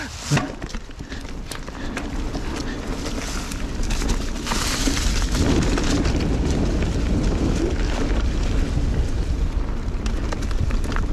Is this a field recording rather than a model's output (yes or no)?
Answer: yes